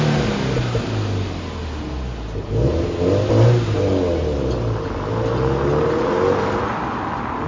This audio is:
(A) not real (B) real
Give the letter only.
B